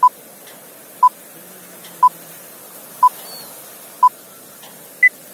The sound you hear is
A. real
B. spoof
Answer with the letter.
A